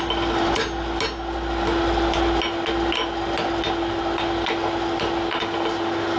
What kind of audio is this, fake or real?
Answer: real